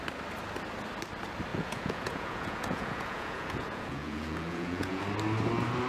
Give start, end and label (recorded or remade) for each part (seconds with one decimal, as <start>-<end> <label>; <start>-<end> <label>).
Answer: 0.0-1.5 recorded; 1.5-5.0 remade; 5.0-5.9 recorded